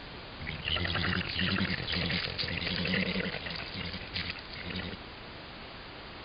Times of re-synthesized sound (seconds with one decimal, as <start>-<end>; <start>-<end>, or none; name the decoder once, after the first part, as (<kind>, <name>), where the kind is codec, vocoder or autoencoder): 0.0-3.7 (vocoder, BigVGAN v2)